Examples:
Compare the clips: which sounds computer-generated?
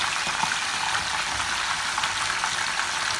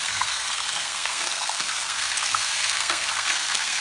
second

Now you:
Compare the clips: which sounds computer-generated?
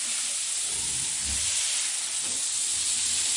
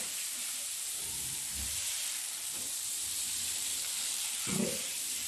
second